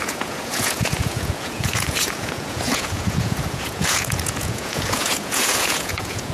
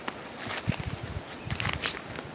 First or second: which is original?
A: second